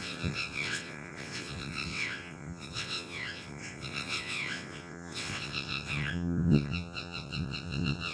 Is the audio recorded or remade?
remade